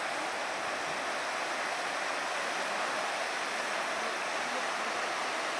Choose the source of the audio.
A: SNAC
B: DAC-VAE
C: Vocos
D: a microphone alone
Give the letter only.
D